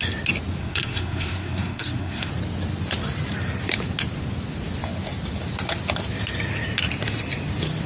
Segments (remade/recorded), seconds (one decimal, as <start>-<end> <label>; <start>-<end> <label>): 0.0-0.6 recorded; 0.6-2.3 remade; 2.3-7.9 recorded